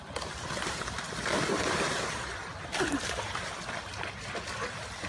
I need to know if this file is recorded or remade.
recorded